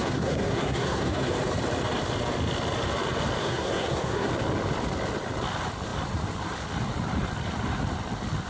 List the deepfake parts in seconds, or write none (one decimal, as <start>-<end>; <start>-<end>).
0.0-1.3; 3.4-4.3